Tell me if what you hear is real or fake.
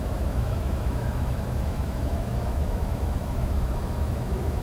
fake